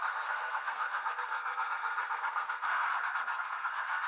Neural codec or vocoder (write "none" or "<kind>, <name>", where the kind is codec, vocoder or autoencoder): codec, SNAC